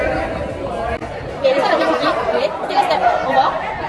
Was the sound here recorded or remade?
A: recorded